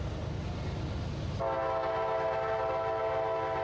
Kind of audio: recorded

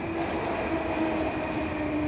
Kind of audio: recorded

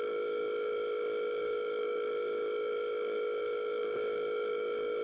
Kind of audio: remade